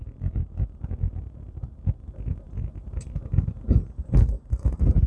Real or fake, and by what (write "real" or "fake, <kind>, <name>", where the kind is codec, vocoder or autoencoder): real